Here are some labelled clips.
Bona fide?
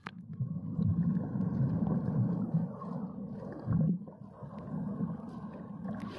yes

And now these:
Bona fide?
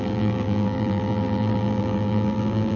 no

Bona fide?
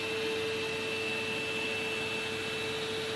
yes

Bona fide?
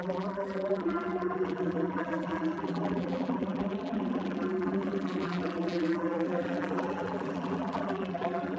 no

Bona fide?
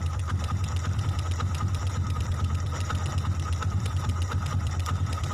no